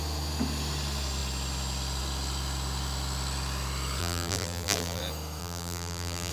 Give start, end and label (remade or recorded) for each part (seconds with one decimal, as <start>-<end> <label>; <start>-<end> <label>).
0.0-4.0 recorded; 4.0-5.0 remade; 5.0-5.4 recorded; 5.4-6.3 remade